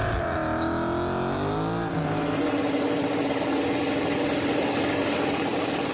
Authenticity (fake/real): real